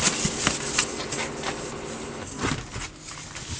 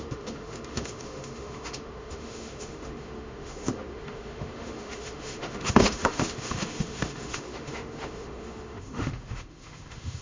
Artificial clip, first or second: second